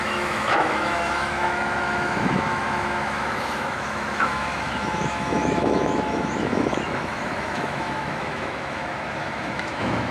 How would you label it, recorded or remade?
remade